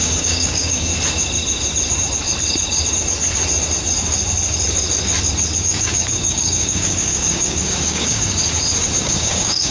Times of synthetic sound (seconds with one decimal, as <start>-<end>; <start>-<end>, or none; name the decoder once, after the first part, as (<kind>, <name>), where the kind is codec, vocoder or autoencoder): 0.0-0.9 (codec, DAC); 5.6-8.4; 9.0-9.7